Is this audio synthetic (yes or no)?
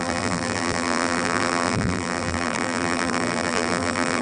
yes